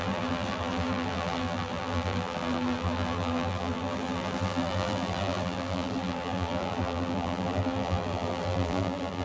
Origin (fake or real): fake